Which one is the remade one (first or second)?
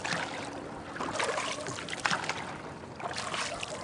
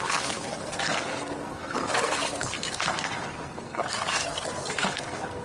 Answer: second